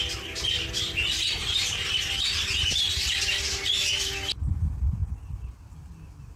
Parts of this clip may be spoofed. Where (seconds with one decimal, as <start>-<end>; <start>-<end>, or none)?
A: none